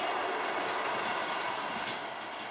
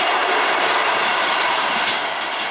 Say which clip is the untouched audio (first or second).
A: first